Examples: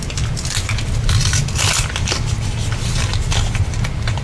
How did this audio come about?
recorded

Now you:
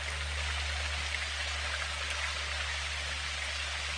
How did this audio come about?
recorded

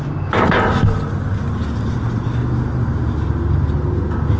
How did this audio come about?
recorded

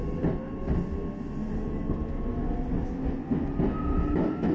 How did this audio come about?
recorded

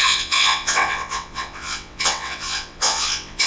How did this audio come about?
remade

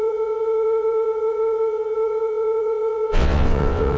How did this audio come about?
remade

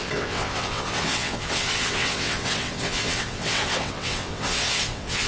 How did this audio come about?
remade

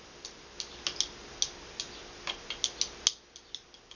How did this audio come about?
recorded